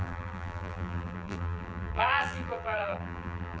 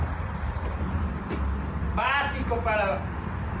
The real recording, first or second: second